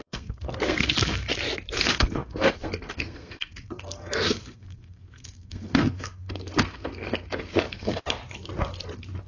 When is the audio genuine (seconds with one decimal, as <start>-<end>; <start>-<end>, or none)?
1.3-1.8; 8.2-9.3